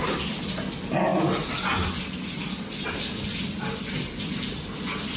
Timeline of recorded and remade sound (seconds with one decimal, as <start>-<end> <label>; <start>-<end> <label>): 0.0-5.2 recorded